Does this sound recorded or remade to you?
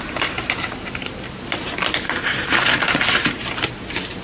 recorded